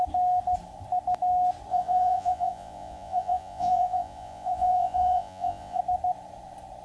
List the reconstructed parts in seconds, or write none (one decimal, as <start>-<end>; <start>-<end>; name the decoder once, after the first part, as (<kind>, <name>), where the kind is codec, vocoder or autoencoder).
1.7-5.8 (vocoder, Vocos)